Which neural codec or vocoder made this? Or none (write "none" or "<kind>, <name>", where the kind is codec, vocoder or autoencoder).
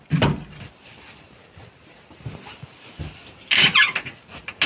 none